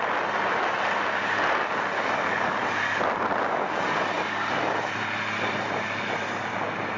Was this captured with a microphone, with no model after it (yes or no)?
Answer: yes